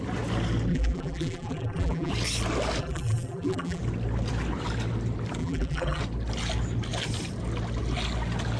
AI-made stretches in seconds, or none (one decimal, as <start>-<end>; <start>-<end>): 0.7-2.1; 2.8-3.8; 5.4-6.0

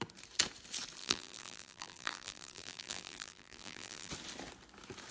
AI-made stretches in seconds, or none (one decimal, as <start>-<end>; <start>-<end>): 1.0-4.1

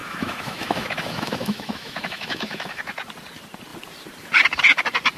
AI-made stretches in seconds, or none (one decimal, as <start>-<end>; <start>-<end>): 0.0-2.8

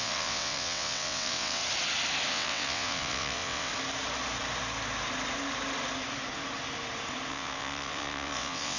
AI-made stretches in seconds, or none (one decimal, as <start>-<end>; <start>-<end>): 0.0-1.6; 2.3-3.7; 7.3-8.8

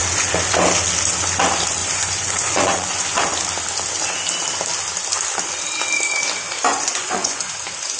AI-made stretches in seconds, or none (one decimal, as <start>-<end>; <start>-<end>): 1.8-3.2; 6.7-7.5

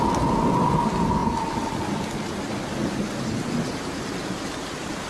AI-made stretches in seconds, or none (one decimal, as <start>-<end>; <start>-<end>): none

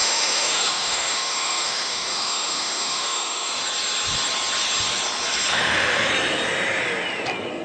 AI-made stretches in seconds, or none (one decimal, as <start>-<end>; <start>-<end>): 0.0-3.5; 5.5-6.1

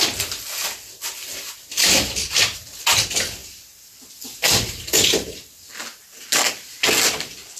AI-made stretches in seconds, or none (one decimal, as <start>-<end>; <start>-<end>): none